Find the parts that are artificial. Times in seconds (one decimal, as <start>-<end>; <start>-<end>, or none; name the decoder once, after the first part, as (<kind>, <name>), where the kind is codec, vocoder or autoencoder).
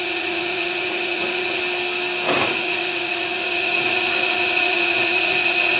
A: 0.0-1.6 (vocoder, Vocos); 2.4-5.8